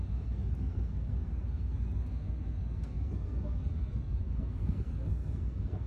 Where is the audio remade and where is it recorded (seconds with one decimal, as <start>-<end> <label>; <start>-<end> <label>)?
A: 0.0-5.9 remade